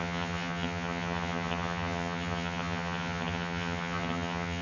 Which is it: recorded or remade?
remade